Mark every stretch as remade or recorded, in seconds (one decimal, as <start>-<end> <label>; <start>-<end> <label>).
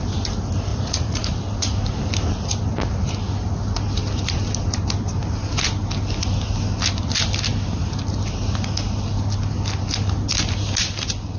0.0-0.7 recorded; 0.7-1.3 remade; 1.3-11.4 recorded